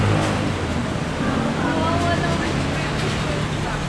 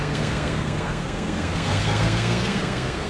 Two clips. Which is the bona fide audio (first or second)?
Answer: first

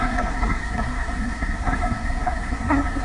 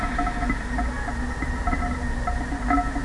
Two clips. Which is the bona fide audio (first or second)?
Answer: second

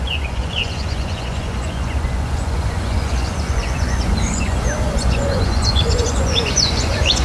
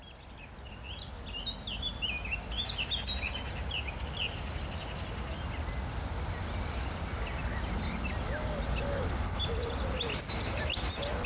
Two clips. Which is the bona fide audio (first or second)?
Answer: second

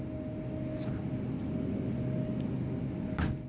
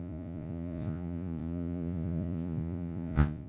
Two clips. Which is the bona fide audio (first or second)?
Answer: first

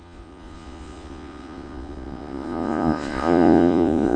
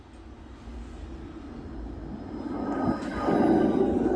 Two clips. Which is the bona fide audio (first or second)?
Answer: second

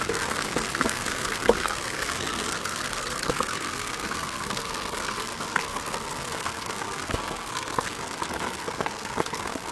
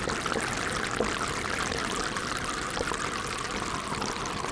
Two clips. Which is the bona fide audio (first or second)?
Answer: second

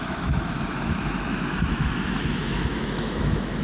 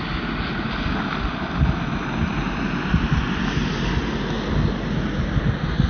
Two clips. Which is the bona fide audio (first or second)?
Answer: second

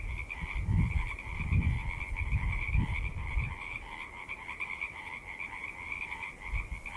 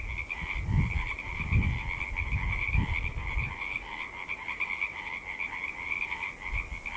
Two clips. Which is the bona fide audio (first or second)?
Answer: second